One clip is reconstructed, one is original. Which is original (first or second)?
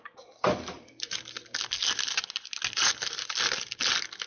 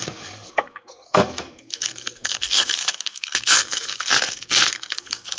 first